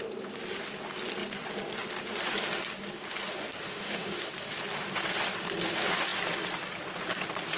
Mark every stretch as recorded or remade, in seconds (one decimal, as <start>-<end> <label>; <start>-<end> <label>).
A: 0.0-3.4 recorded; 3.4-4.3 remade; 4.3-7.6 recorded